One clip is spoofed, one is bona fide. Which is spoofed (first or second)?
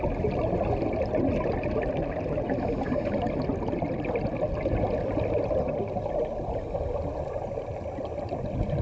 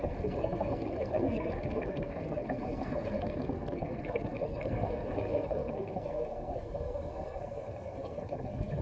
second